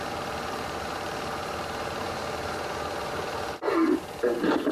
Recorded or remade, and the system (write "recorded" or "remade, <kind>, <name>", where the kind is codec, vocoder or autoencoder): remade, vocoder, BigVGAN v2